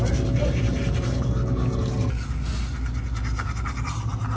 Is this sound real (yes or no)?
yes